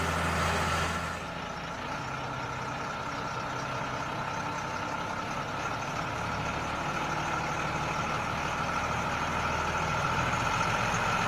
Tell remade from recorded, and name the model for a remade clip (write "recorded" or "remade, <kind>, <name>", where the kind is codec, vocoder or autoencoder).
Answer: recorded